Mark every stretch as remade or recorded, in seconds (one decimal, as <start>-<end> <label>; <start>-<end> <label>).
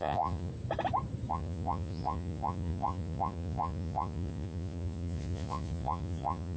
0.0-0.5 remade; 0.5-1.3 recorded; 1.3-6.6 remade